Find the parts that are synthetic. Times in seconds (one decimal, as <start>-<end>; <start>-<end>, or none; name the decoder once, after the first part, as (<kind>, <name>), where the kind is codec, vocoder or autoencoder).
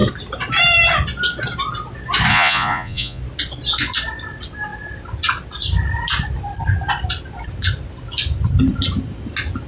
2.3-3.2 (vocoder, Vocos)